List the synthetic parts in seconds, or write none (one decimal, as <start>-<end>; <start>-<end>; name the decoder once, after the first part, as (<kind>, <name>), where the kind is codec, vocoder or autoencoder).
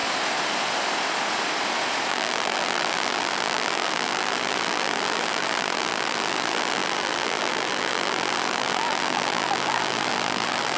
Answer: 2.1-10.8 (vocoder, BigVGAN v2)